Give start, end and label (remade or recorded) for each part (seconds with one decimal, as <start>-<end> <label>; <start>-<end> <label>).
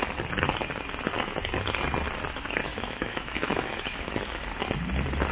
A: 0.0-2.7 recorded; 2.7-4.4 remade; 4.4-5.3 recorded